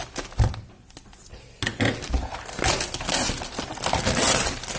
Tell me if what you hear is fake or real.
real